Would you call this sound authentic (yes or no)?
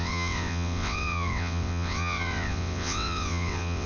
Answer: no